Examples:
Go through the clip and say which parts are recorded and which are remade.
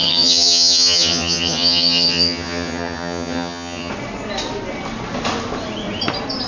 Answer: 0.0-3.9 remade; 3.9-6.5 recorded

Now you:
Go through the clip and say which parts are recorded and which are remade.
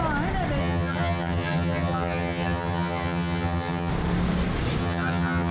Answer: 0.0-0.6 recorded; 0.6-3.9 remade; 3.9-4.8 recorded; 4.8-5.5 remade